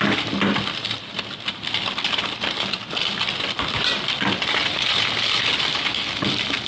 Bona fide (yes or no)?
yes